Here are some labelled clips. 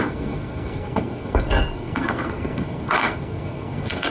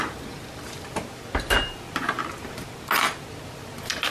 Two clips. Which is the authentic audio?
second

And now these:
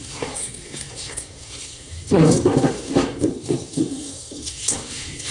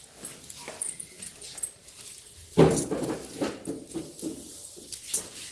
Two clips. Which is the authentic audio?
second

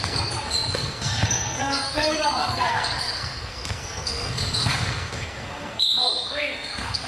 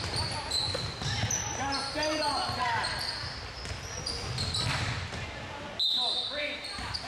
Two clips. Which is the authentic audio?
second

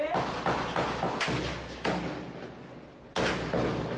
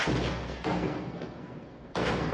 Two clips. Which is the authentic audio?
first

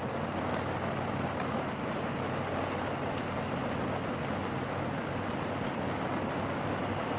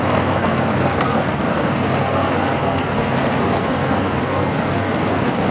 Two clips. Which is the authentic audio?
first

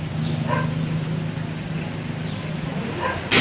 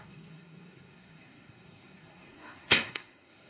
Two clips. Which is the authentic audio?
first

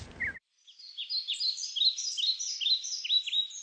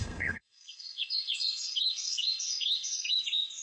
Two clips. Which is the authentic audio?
first